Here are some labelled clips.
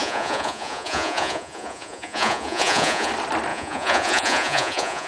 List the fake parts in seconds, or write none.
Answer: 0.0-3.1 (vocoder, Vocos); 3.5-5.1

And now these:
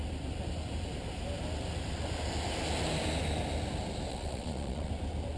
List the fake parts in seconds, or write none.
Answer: 4.1-4.9 (vocoder, Vocos)

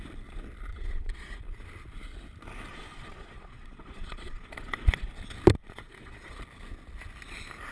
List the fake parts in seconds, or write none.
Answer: 0.7-1.4 (vocoder, Vocos); 2.7-5.1; 5.6-6.4

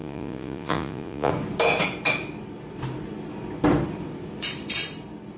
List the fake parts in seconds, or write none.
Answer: 0.0-1.3 (vocoder, Vocos)